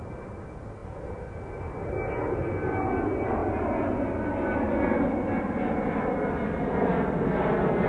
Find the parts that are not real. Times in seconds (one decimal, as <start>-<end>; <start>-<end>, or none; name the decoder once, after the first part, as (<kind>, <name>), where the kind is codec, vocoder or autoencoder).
none